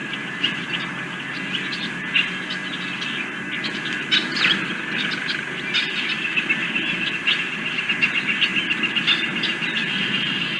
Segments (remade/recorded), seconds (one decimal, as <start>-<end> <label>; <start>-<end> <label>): 0.0-10.6 recorded